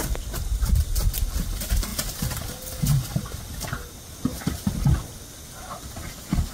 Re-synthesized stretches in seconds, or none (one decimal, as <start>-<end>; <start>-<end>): none